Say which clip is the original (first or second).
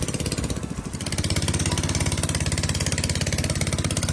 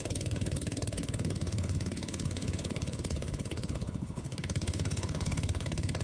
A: first